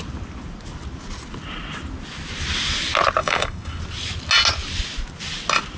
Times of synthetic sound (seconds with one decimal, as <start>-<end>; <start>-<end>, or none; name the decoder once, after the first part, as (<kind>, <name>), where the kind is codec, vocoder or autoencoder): 3.2-3.8 (codec, DAC)